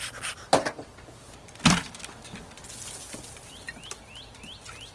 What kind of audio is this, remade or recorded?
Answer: recorded